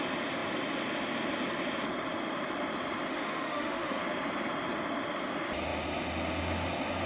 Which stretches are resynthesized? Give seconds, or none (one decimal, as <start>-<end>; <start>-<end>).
3.1-4.0